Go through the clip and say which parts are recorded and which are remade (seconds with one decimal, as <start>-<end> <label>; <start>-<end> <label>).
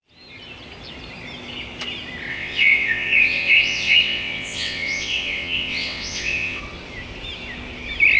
0.0-2.3 recorded; 2.3-6.6 remade; 6.6-8.2 recorded